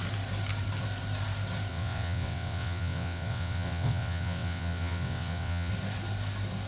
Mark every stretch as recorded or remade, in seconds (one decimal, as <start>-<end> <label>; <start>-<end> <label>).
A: 0.0-1.7 recorded; 1.7-5.7 remade; 5.7-6.7 recorded